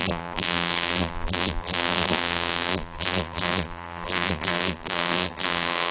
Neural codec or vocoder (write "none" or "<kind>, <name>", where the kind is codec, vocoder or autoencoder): vocoder, BigVGAN v2